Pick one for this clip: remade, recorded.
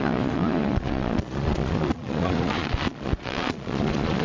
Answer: remade